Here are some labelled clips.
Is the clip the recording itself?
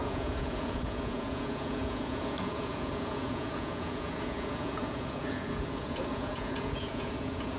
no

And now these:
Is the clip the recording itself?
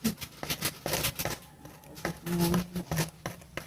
yes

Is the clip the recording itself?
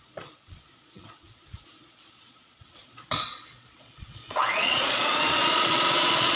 no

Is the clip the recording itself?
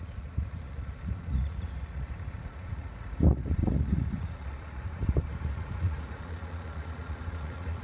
no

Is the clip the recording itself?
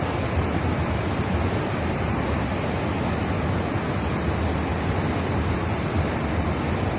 yes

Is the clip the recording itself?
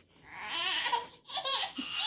yes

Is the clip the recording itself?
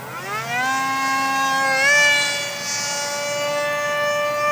yes